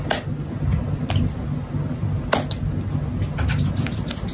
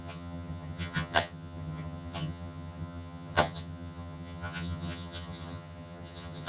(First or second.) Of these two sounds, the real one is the first